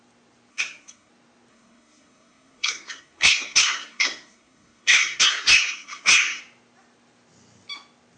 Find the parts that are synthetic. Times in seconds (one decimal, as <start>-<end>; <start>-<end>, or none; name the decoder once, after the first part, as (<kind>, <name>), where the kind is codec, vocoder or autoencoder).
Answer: 0.5-1.1 (codec, SNAC); 1.5-6.4